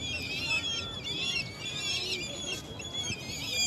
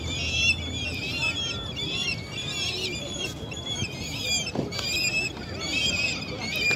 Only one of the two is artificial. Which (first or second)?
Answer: second